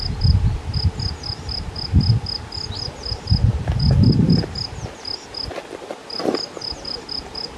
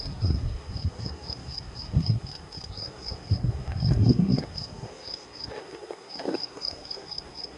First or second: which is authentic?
first